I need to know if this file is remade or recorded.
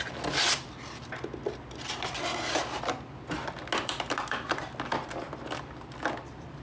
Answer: recorded